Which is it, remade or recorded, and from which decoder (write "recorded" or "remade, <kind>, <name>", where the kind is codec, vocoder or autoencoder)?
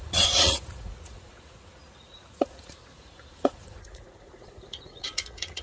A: remade, vocoder, Vocos